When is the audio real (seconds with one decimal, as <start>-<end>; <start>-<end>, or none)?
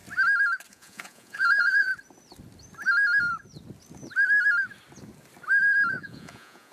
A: 0.0-0.7; 1.9-5.9